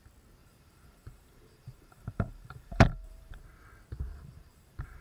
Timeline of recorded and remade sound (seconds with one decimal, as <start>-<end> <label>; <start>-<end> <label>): 0.0-0.4 recorded; 0.4-3.4 remade; 3.4-4.1 recorded; 4.1-5.0 remade